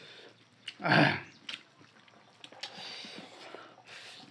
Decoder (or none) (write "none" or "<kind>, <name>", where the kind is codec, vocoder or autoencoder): none